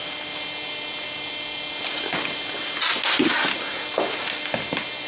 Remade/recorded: recorded